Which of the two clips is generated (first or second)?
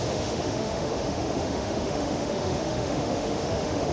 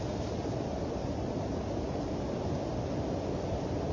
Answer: first